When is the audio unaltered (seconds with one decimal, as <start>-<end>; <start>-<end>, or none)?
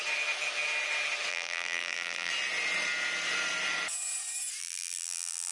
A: 0.0-1.3; 2.3-4.6